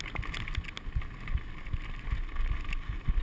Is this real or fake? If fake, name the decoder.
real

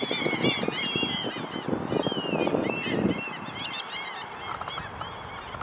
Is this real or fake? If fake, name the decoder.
real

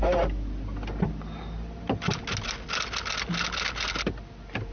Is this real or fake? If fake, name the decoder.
real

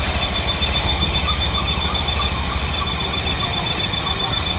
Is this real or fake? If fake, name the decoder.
real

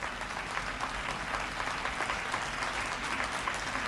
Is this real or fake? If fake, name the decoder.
real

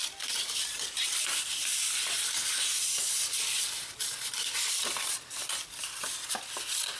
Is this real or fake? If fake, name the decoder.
fake, vocoder, BigVGAN v2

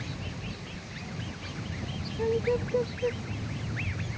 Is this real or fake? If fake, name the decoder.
real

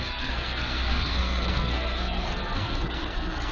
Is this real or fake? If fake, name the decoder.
fake, codec, SNAC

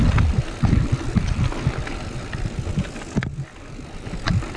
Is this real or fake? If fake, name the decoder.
real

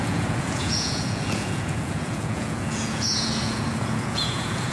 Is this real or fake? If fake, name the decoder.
fake, vocoder, Vocos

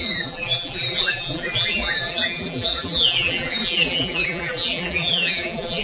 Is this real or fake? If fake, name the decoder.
fake, vocoder, BigVGAN v2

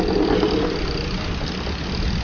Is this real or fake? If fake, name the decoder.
real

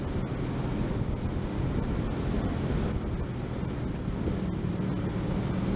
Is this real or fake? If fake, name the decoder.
real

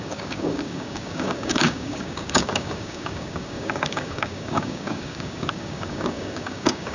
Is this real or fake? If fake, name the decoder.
fake, codec, DAC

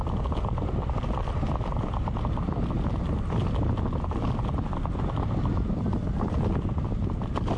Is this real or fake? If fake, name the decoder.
real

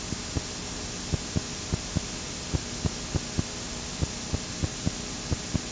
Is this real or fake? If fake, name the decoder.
real